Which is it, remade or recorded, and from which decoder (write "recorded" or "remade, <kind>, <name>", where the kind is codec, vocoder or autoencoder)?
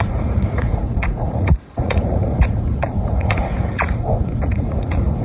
remade, vocoder, Vocos